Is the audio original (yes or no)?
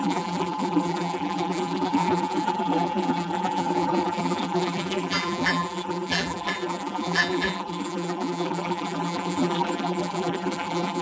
no